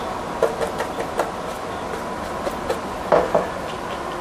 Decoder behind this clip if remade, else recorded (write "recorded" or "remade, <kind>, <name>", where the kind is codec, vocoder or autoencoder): recorded